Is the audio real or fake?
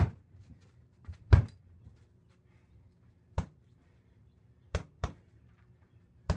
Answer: fake